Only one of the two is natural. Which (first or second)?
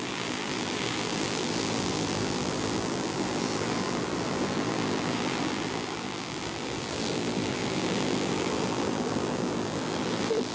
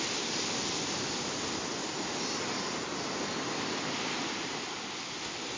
second